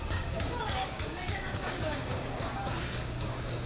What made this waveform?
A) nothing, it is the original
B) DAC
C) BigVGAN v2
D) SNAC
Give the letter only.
B